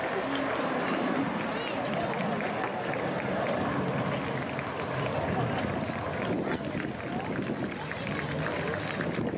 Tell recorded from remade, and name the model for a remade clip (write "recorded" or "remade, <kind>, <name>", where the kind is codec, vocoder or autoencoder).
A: recorded